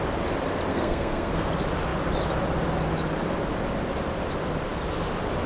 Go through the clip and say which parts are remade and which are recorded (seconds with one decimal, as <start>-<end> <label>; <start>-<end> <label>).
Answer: 0.0-0.7 recorded; 0.7-1.5 remade; 1.5-5.5 recorded